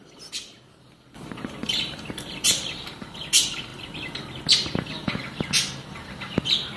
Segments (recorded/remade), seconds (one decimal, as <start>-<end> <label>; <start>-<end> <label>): 0.0-1.6 recorded; 1.6-2.8 remade; 2.8-6.8 recorded